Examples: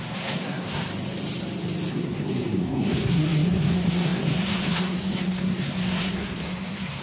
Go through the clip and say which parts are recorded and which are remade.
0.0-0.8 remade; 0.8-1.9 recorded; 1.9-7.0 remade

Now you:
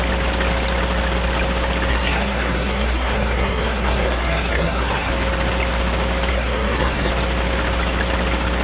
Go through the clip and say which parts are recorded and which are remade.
0.0-1.9 recorded; 1.9-5.1 remade; 5.1-6.3 recorded; 6.3-7.1 remade; 7.1-8.6 recorded

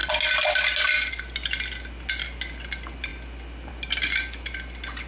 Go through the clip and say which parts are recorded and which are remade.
0.0-5.1 recorded